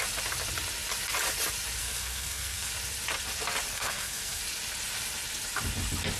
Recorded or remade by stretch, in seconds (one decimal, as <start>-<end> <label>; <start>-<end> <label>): 0.0-1.8 recorded; 1.8-2.7 remade; 2.7-3.7 recorded; 3.7-4.4 remade; 4.4-6.2 recorded